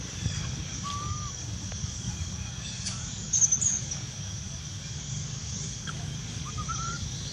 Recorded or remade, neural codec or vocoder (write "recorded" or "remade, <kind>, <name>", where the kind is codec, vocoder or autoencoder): remade, codec, DAC